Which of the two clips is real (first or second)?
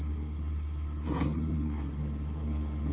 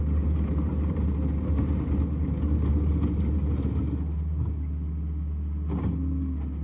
second